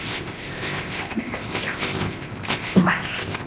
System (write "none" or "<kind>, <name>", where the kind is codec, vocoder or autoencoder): codec, ZipCodec